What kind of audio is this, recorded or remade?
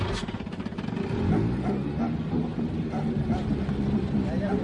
recorded